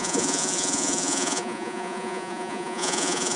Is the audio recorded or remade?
remade